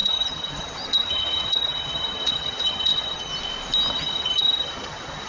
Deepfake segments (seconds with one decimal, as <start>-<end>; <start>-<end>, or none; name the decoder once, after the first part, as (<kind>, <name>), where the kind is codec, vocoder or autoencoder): 0.0-3.3 (vocoder, HiFi-GAN); 3.9-5.3